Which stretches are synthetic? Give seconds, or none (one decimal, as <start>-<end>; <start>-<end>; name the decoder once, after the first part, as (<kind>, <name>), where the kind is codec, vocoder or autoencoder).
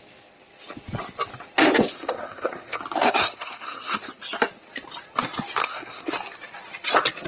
1.9-2.8 (codec, SNAC); 3.2-4.2; 5.6-6.1